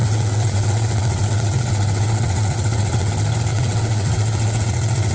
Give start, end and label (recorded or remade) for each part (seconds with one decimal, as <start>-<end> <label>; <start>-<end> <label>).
0.0-3.1 remade; 3.1-3.5 recorded; 3.5-5.1 remade

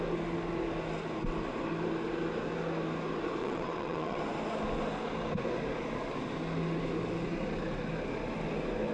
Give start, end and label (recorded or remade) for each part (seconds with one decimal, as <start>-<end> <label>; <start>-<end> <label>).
0.0-3.4 recorded; 3.4-4.2 remade; 4.2-8.9 recorded

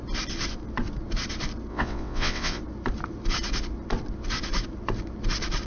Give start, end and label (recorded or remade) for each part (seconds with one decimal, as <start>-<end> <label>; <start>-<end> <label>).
0.0-1.7 recorded; 1.7-2.6 remade; 2.6-5.7 recorded

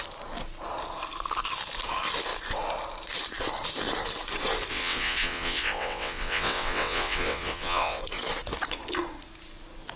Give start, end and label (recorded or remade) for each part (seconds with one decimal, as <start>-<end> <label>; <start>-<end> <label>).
0.0-4.7 recorded; 4.7-8.0 remade; 8.0-10.0 recorded

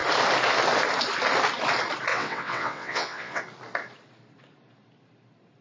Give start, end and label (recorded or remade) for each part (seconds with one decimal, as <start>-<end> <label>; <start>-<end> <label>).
0.0-2.1 recorded; 2.1-3.4 remade; 3.4-5.6 recorded

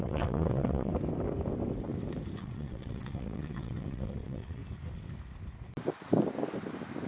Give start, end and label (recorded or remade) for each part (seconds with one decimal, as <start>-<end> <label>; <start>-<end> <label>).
0.0-0.9 remade; 0.9-2.4 recorded; 2.4-4.6 remade; 4.6-7.1 recorded

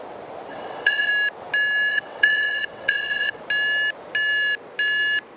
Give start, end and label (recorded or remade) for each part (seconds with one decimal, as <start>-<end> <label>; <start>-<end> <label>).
0.0-0.5 recorded; 0.5-1.1 remade; 1.1-1.9 recorded; 1.9-3.4 remade; 3.4-5.4 recorded